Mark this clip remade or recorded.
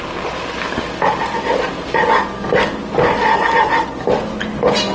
recorded